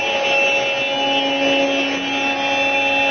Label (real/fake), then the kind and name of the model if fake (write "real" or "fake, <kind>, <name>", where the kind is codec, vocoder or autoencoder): real